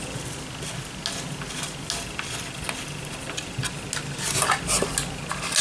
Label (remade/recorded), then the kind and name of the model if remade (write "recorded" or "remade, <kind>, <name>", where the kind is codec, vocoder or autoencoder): recorded